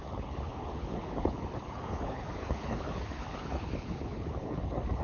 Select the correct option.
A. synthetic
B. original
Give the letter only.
A